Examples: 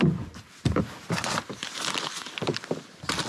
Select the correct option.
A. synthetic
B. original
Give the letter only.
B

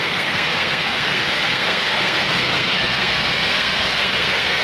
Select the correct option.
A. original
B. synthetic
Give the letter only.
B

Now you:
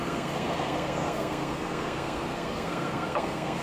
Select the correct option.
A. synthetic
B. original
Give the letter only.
A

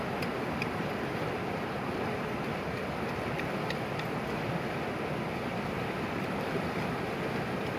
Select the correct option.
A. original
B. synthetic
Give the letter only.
A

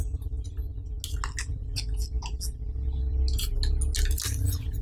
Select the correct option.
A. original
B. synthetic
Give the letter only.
A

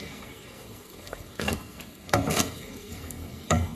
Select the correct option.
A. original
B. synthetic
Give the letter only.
B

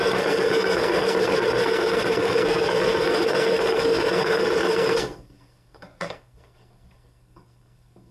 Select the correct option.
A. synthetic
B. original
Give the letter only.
A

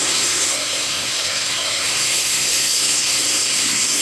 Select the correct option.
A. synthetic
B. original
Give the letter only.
A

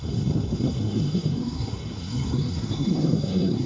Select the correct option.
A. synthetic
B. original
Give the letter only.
A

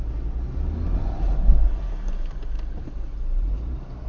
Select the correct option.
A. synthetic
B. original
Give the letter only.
B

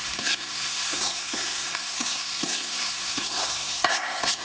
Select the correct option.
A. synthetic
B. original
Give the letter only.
A